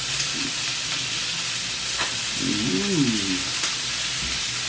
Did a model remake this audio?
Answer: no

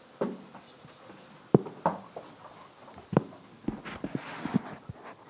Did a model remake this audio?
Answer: no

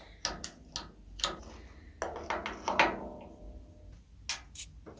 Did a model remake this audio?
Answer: no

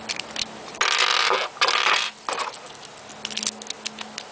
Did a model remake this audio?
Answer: no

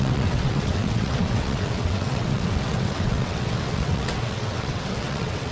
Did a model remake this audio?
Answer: yes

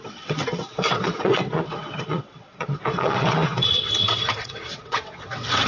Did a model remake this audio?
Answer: yes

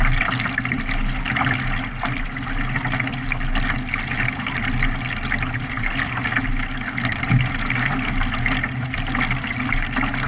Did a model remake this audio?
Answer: no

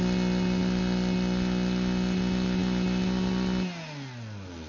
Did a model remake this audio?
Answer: no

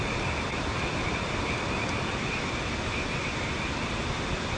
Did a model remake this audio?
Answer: no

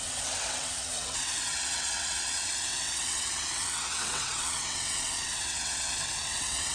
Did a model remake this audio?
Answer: yes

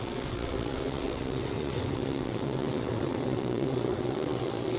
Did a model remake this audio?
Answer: yes